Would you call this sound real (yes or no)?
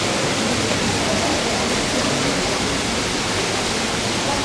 yes